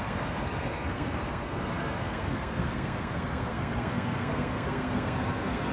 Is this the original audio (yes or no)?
no